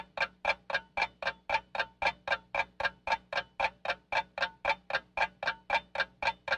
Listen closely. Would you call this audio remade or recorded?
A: recorded